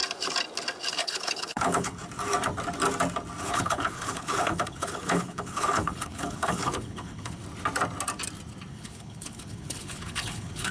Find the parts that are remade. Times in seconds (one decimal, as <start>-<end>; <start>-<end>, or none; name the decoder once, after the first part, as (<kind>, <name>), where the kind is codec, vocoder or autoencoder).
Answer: 0.9-2.0 (codec, HILCodec); 3.4-7.4; 8.7-10.7